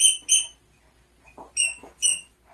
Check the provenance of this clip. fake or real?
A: real